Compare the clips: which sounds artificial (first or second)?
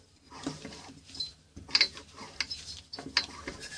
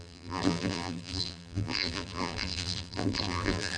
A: second